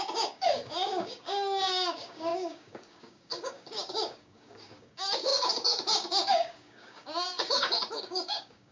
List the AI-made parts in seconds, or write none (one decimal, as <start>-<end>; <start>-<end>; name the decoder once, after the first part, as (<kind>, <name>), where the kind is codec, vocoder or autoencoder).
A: 0.0-8.7 (codec, DAC)